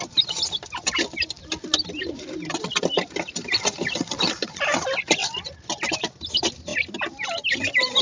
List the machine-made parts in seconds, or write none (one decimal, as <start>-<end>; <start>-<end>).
none